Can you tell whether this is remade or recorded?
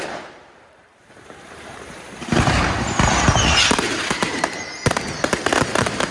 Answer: remade